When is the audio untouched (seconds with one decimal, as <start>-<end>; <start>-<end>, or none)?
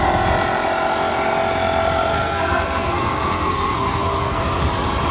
0.0-2.1; 4.4-5.1